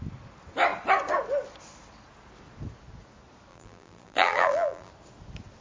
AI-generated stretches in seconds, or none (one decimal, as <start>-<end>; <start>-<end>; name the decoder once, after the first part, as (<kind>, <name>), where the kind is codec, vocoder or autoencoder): 3.5-4.9 (vocoder, BigVGAN v2)